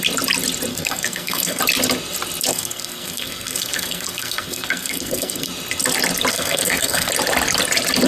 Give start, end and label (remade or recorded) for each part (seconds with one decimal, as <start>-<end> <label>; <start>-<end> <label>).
0.0-0.7 recorded; 0.7-1.6 remade; 1.6-2.5 recorded; 2.5-5.5 remade; 5.5-6.3 recorded; 6.3-7.1 remade; 7.1-8.1 recorded